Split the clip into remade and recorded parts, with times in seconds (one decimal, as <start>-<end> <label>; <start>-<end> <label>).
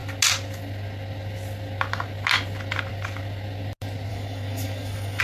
0.0-4.1 recorded; 4.1-5.2 remade